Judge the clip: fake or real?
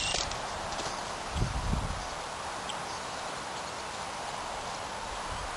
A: real